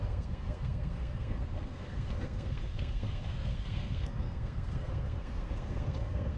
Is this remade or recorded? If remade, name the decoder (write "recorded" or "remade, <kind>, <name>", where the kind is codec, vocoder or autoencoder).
remade, codec, SNAC